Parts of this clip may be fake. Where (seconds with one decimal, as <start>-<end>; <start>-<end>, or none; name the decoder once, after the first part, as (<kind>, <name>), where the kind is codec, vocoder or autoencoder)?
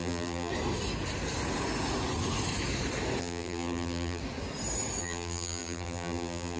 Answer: 0.0-0.5 (vocoder, BigVGAN v2); 3.2-4.2; 5.0-6.6